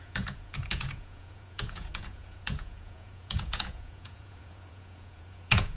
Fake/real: fake